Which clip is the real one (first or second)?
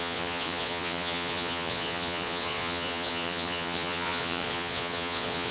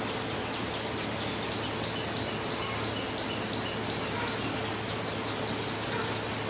second